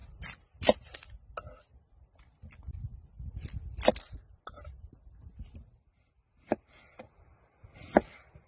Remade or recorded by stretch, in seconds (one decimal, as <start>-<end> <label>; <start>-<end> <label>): 0.0-8.5 recorded